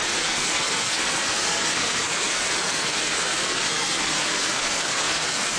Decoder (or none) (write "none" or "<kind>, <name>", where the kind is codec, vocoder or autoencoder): codec, SNAC